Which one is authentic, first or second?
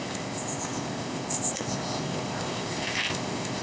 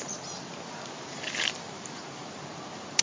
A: second